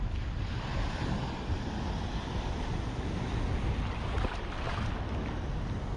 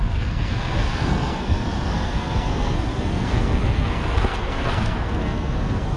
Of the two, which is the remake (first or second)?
second